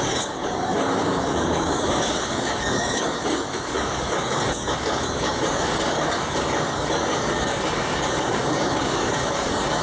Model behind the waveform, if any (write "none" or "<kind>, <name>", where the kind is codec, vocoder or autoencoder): codec, DAC